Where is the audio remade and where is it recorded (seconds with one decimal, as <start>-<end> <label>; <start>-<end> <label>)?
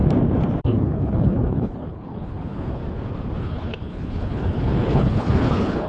0.0-0.6 recorded; 0.6-2.8 remade; 2.8-3.4 recorded; 3.4-5.9 remade